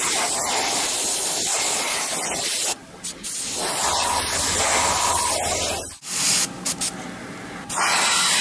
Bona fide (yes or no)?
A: yes